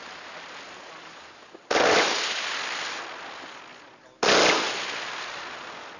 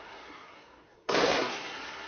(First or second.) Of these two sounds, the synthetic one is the second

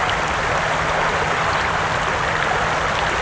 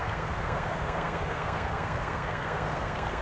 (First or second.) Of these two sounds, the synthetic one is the second